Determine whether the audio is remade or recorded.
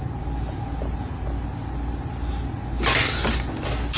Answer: recorded